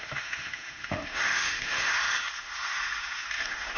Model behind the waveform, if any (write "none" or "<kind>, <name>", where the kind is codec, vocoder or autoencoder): autoencoder, DAC-VAE